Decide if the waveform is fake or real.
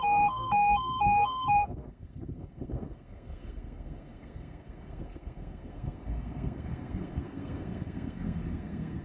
fake